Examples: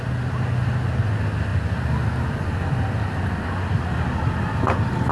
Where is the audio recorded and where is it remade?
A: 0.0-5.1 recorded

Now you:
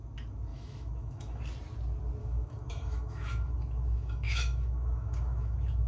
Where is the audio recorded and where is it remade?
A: 0.0-0.5 recorded; 0.5-1.4 remade; 1.4-2.2 recorded; 2.2-5.9 remade

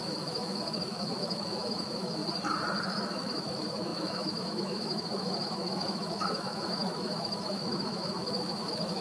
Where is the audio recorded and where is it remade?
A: 0.0-2.2 remade; 2.2-2.8 recorded; 2.8-9.0 remade

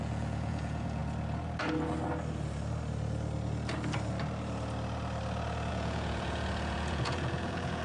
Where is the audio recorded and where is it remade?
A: 0.0-1.0 remade; 1.0-5.7 recorded; 5.7-7.8 remade

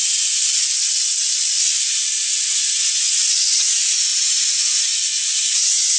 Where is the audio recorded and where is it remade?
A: 0.0-2.3 recorded; 2.3-6.0 remade

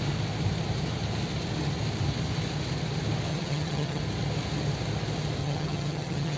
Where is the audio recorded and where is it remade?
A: 0.0-3.3 recorded; 3.3-4.0 remade; 4.0-5.4 recorded; 5.4-6.4 remade

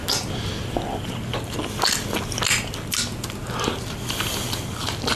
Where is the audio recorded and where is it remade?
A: 0.0-5.2 recorded

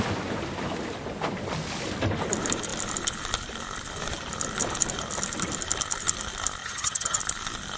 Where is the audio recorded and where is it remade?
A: 0.0-6.6 recorded; 6.6-7.2 remade; 7.2-7.8 recorded